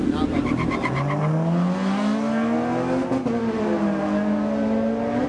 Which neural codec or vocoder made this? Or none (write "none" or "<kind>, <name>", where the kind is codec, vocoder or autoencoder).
none